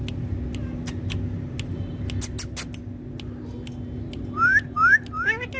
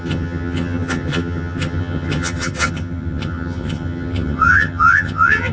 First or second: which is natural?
first